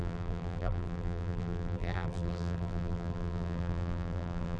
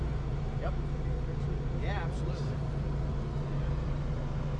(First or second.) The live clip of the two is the second